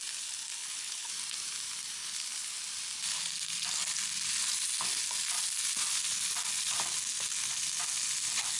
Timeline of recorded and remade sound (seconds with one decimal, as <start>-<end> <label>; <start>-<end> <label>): 0.0-0.6 recorded; 0.6-1.1 remade; 1.1-2.0 recorded; 2.0-2.6 remade; 2.6-8.6 recorded